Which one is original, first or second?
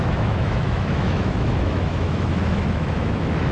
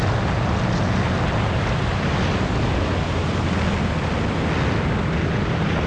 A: second